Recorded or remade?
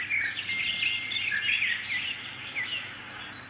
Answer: recorded